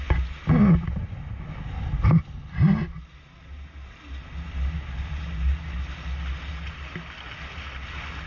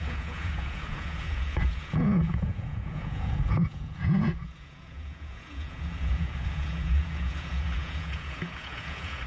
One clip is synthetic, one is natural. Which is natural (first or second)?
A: first